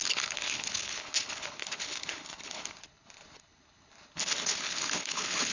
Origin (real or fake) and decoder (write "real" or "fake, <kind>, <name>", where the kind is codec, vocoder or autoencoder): fake, codec, HILCodec